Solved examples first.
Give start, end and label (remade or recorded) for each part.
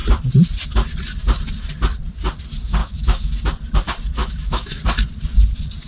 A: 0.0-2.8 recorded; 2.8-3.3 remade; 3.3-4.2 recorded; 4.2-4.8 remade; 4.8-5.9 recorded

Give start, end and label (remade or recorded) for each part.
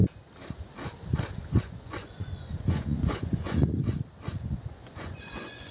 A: 0.0-1.6 recorded; 1.6-3.8 remade; 3.8-4.3 recorded; 4.3-5.7 remade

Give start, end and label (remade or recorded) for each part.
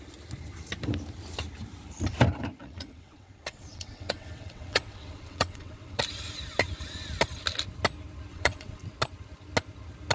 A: 0.0-2.6 recorded; 2.6-6.0 remade; 6.0-8.3 recorded; 8.3-8.8 remade; 8.8-10.1 recorded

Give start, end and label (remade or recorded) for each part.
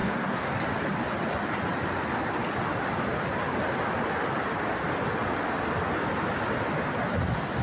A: 0.0-0.6 remade; 0.6-7.6 recorded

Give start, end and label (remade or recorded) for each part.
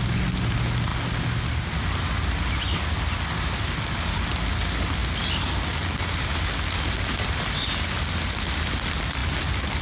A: 0.0-9.8 recorded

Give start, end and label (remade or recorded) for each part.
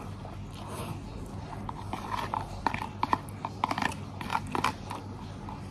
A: 0.0-1.1 recorded; 1.1-3.9 remade; 3.9-4.3 recorded; 4.3-5.0 remade; 5.0-5.7 recorded